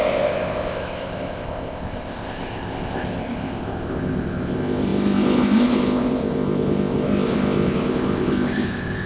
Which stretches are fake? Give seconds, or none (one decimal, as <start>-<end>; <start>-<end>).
0.0-9.1